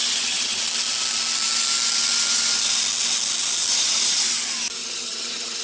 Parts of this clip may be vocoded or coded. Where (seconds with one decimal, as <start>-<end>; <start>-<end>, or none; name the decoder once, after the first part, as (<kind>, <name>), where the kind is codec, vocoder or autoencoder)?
0.0-0.6 (vocoder, HiFi-GAN); 4.8-5.6